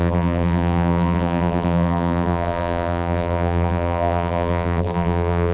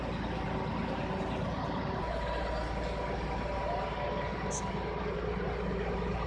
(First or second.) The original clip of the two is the second